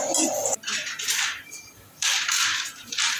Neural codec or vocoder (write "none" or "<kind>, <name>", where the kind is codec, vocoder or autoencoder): vocoder, BigVGAN v2